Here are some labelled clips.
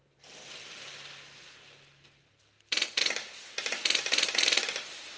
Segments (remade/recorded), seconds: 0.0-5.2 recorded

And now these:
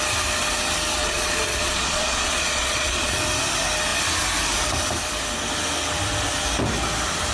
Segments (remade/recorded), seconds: 0.0-1.0 recorded; 1.0-3.2 remade; 3.2-7.3 recorded

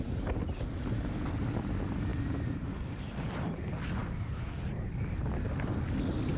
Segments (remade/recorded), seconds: 0.0-4.0 recorded; 4.0-4.5 remade; 4.5-6.4 recorded

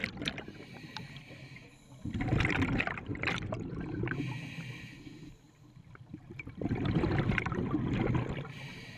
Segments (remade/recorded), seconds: 0.0-9.0 recorded

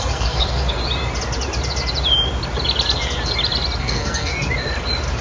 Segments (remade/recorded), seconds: 0.0-0.8 remade; 0.8-3.8 recorded; 3.8-4.3 remade; 4.3-5.2 recorded